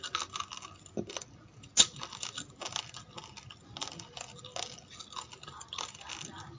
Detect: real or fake real